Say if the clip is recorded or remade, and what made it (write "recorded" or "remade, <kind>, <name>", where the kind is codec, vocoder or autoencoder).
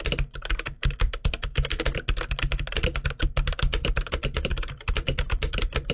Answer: recorded